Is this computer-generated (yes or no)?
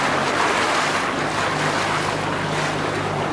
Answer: no